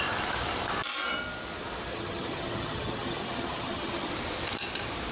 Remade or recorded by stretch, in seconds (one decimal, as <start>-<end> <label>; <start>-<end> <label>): 0.0-1.9 recorded; 1.9-4.1 remade; 4.1-5.1 recorded